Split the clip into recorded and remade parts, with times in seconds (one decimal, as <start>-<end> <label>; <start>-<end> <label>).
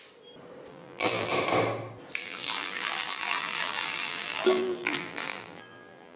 0.0-0.7 recorded; 0.7-1.3 remade; 1.3-2.2 recorded; 2.2-6.2 remade